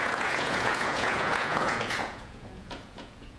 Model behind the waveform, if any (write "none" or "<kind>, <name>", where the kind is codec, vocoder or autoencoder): vocoder, Vocos